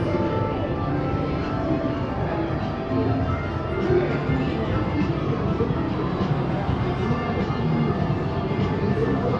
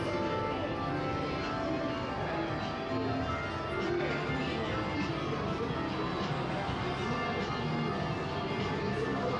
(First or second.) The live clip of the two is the second